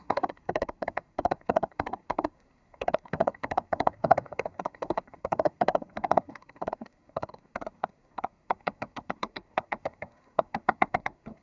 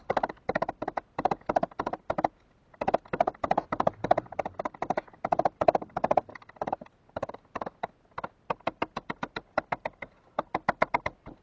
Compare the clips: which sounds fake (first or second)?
first